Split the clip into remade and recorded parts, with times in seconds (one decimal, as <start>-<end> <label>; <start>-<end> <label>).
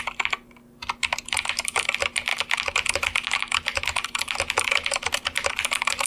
0.0-6.1 recorded